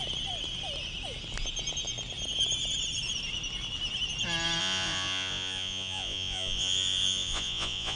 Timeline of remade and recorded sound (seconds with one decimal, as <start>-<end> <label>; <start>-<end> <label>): 0.0-4.6 recorded; 4.6-8.0 remade